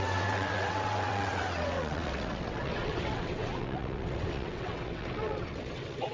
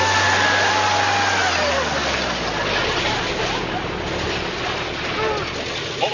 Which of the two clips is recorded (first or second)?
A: second